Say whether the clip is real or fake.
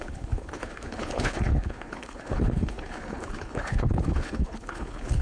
fake